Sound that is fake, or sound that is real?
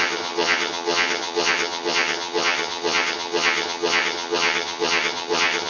fake